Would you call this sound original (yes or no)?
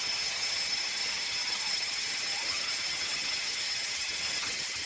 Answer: no